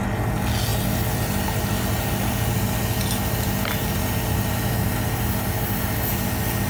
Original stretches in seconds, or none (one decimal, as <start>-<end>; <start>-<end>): 0.0-6.7